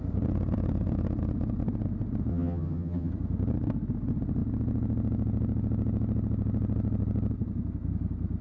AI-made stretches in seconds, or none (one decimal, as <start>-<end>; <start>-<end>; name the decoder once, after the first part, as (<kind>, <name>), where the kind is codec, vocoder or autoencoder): 2.3-3.1 (vocoder, HiFi-GAN)